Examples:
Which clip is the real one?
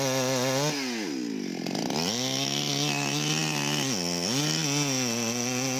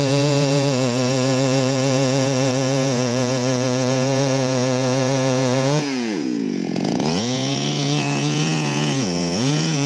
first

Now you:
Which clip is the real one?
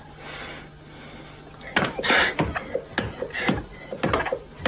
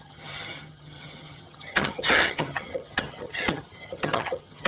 first